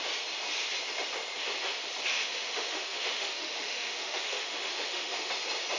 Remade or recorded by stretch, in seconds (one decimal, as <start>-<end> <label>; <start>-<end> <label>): 0.0-2.1 recorded; 2.1-5.3 remade; 5.3-5.8 recorded